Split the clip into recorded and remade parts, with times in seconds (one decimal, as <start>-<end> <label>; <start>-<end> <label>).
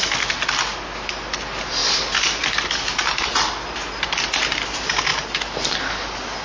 0.0-6.4 recorded